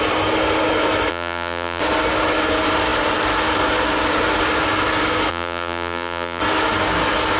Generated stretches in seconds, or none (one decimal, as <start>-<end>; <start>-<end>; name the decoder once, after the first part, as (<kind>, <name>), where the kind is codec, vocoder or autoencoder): 1.1-1.8 (vocoder, BigVGAN v2); 5.3-6.4